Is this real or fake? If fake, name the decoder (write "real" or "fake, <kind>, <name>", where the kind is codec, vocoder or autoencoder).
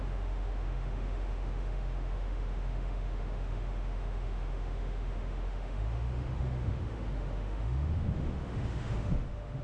fake, autoencoder, DAC-VAE